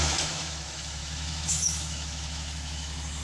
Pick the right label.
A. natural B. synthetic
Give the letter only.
B